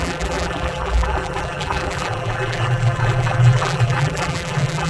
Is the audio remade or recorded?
remade